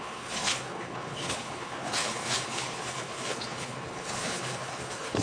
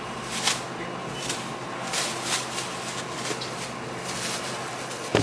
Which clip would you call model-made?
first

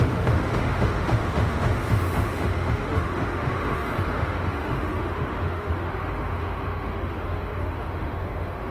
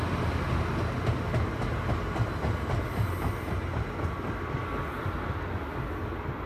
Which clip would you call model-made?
first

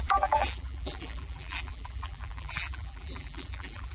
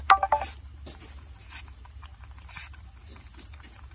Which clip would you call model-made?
first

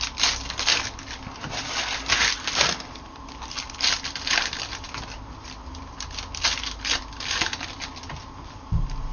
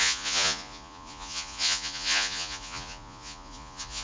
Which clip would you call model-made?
second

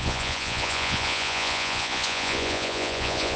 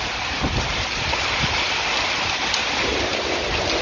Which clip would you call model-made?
first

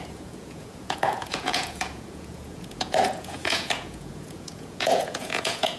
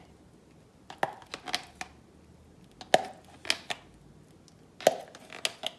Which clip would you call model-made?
first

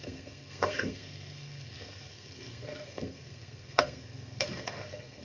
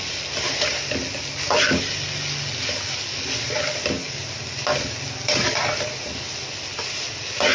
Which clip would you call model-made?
first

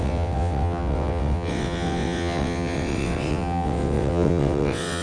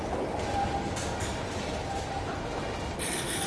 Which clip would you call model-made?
first